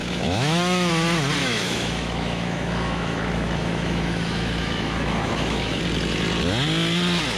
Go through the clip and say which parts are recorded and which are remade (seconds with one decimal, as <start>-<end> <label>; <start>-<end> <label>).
0.0-0.9 remade; 0.9-1.4 recorded; 1.4-5.8 remade; 5.8-7.4 recorded